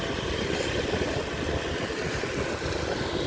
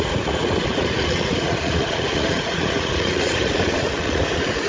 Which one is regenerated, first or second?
second